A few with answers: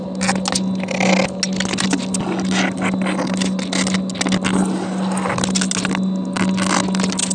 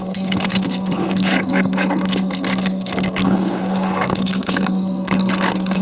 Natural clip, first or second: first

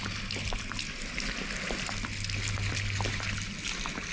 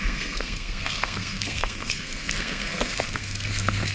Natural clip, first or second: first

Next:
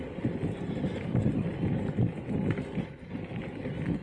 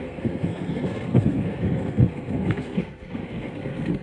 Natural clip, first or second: first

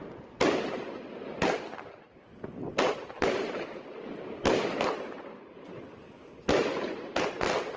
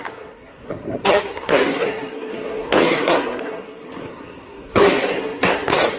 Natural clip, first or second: first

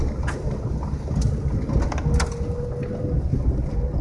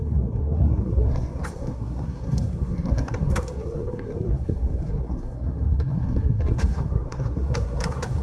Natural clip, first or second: first